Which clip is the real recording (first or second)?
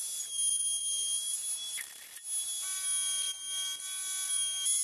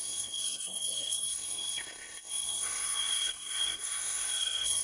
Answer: first